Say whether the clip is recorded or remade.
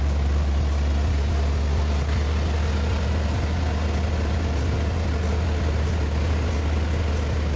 recorded